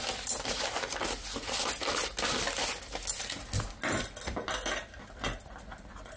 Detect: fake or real real